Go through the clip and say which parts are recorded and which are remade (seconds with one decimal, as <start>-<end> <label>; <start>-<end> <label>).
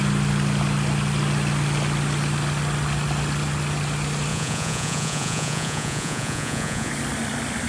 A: 0.0-4.3 recorded; 4.3-6.9 remade; 6.9-7.7 recorded